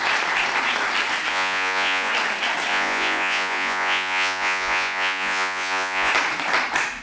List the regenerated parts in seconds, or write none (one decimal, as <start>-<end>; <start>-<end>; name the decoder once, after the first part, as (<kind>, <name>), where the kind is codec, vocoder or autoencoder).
1.3-2.1 (vocoder, Vocos); 2.7-6.1

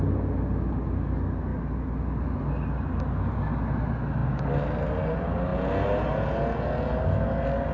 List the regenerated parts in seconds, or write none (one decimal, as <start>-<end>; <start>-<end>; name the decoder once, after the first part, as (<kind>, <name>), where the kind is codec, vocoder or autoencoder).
none